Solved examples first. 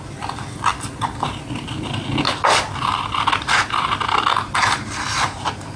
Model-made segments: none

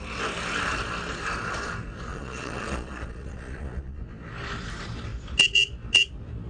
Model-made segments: 2.1-4.0 (vocoder, Vocos)

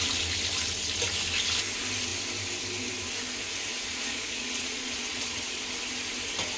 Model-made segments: 3.9-5.6 (vocoder, Vocos)

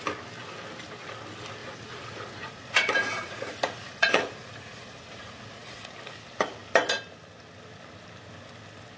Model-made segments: 1.6-5.9 (vocoder, Vocos)

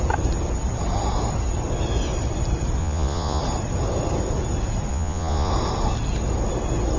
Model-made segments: 2.8-3.4 (vocoder, Vocos); 4.9-5.5

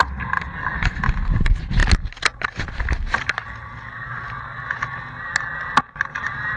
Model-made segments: none